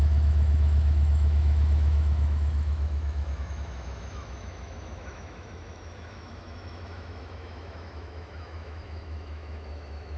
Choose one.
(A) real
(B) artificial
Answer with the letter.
B